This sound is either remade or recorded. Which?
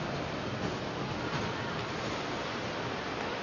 recorded